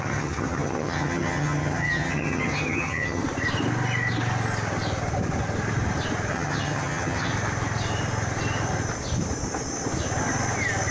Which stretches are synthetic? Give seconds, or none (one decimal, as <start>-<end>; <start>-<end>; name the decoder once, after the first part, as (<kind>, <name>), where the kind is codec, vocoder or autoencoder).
0.0-3.2 (vocoder, HiFi-GAN); 6.3-7.3